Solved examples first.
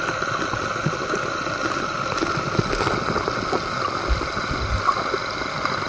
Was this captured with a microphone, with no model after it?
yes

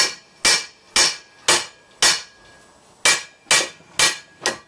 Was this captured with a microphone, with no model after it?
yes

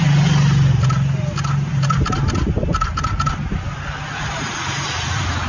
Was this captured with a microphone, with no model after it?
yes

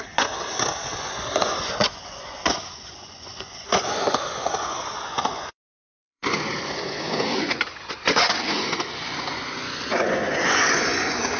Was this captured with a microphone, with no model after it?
no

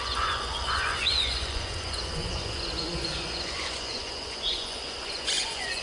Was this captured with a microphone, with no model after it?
no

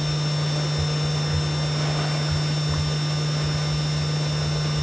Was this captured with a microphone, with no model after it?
yes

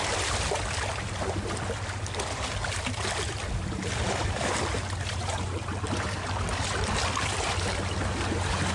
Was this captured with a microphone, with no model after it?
yes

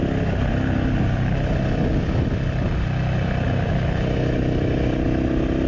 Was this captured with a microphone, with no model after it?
yes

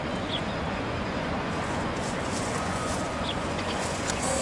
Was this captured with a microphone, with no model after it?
no